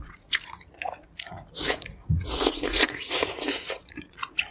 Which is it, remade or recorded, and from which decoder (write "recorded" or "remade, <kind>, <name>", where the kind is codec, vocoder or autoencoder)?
remade, vocoder, Vocos